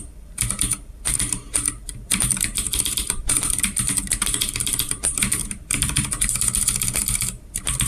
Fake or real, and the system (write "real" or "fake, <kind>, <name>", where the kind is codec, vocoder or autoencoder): fake, vocoder, BigVGAN v2